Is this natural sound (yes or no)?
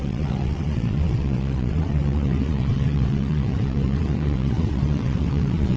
no